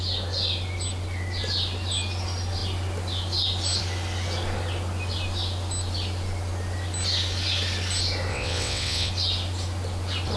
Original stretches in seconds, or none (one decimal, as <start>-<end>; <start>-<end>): 0.0-8.3; 9.1-10.4